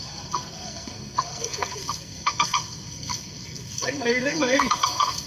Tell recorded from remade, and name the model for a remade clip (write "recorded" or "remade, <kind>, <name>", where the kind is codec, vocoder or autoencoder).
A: remade, codec, SNAC